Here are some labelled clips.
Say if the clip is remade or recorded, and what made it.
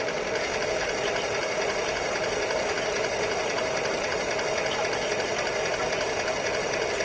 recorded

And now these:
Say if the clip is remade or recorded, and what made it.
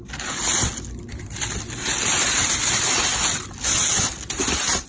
recorded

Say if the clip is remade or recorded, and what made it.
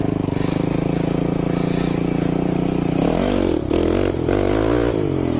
recorded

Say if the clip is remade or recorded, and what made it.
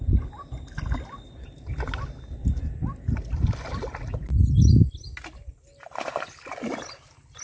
recorded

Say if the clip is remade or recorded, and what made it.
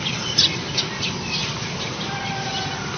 recorded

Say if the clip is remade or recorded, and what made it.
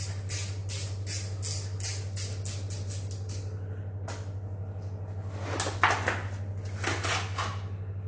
recorded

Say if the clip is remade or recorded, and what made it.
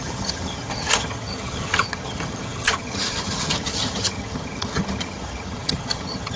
remade, vocoder, HiFi-GAN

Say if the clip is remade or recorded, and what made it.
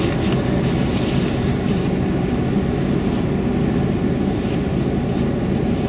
recorded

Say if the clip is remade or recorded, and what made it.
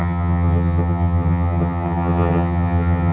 remade, vocoder, HiFi-GAN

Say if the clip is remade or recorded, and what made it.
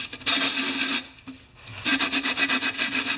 recorded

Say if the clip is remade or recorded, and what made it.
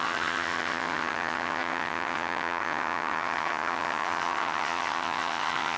remade, vocoder, HiFi-GAN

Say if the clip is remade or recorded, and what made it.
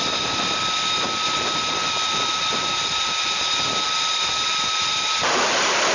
recorded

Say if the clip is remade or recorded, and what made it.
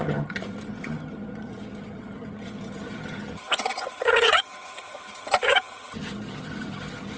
remade, vocoder, HiFi-GAN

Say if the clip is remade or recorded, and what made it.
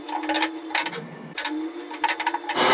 recorded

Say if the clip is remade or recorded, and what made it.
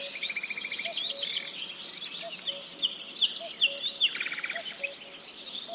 recorded